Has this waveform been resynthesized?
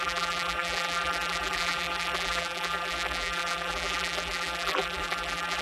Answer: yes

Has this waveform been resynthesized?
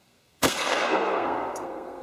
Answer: yes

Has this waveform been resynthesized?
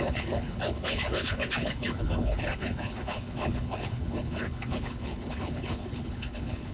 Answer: yes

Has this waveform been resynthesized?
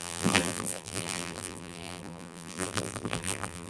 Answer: yes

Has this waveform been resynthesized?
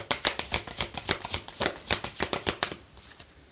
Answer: yes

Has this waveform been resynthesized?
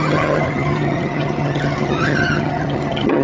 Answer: yes